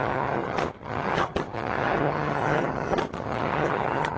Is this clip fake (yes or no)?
yes